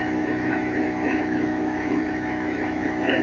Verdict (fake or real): fake